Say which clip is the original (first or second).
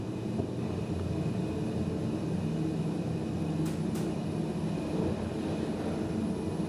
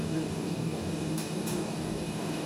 first